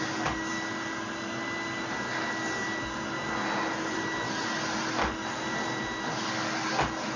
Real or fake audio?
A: real